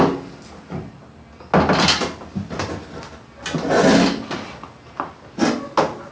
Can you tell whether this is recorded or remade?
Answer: recorded